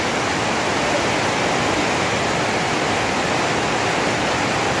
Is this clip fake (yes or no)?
no